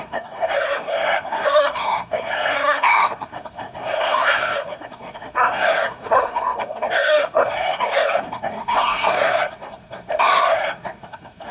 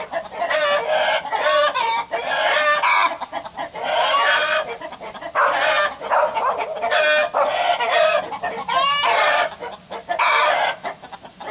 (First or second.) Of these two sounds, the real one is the second